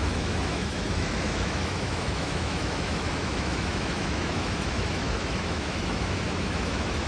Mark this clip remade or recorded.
remade